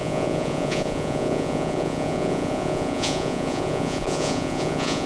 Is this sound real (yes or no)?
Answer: no